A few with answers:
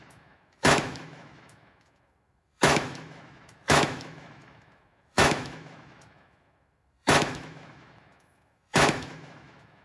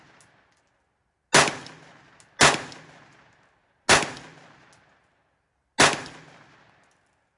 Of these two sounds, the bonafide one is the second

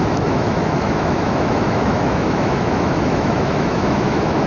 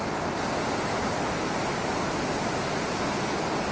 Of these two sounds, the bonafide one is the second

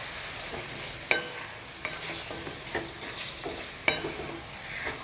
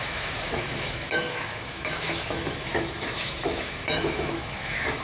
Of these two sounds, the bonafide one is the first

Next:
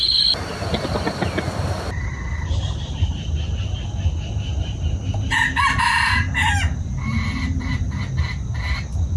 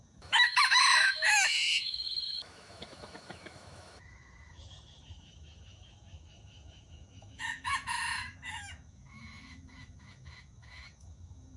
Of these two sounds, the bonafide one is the first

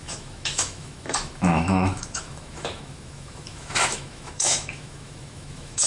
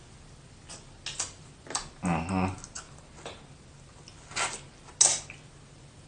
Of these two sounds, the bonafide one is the second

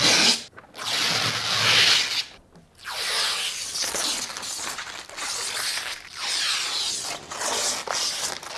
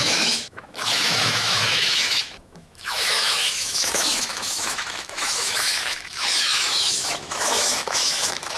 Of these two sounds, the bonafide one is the first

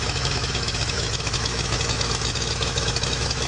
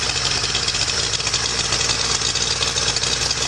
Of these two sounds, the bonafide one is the second